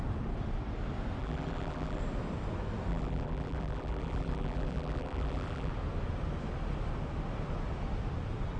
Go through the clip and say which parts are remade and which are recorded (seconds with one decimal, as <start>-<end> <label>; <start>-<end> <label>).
0.0-1.2 recorded; 1.2-2.0 remade; 2.0-2.9 recorded; 2.9-5.7 remade; 5.7-8.6 recorded